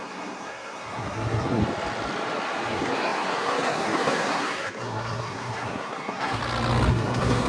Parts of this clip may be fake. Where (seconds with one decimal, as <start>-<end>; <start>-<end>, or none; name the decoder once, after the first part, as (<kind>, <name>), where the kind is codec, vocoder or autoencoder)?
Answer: 0.0-1.6 (codec, SNAC); 2.7-6.4; 6.9-7.5